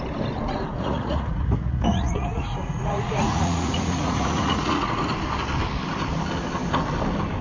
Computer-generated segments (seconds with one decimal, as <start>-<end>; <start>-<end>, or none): 0.7-5.1